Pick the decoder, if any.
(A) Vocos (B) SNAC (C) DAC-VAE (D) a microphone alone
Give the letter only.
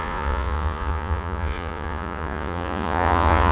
A